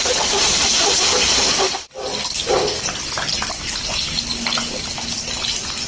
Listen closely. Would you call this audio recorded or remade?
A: recorded